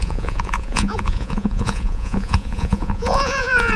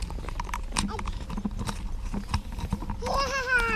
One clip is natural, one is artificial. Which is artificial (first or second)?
first